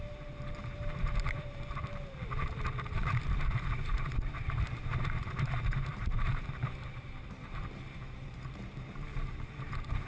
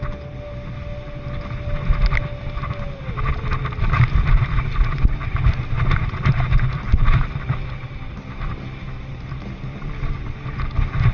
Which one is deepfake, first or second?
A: first